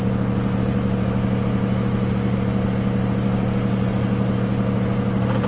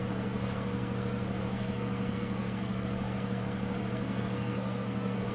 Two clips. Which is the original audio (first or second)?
first